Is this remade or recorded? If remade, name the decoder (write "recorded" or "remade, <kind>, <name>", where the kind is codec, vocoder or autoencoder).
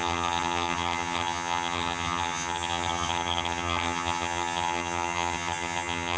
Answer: remade, vocoder, HiFi-GAN